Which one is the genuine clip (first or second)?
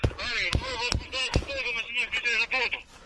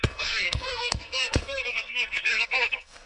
first